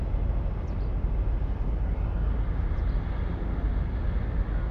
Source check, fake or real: real